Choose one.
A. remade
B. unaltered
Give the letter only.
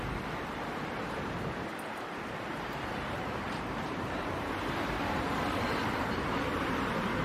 A